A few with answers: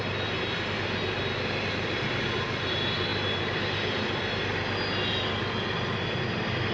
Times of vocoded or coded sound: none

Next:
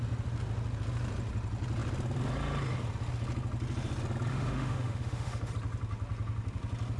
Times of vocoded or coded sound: 4.3-5.5 (autoencoder, DAC-VAE)

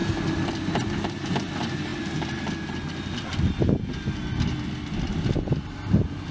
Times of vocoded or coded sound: none

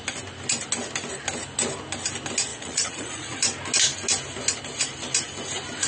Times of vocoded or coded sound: 2.5-3.4 (vocoder, Vocos)

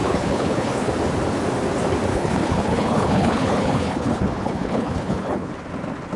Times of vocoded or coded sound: 0.0-0.9 (codec, HILCodec); 2.1-5.5

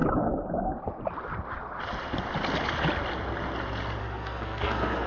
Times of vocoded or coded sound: 4.0-5.1 (codec, SNAC)

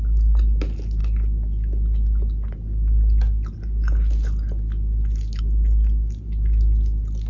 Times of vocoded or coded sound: none

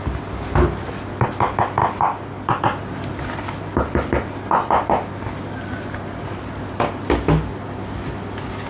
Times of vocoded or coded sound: none